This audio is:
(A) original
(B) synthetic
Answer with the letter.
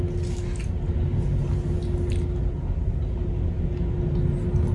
A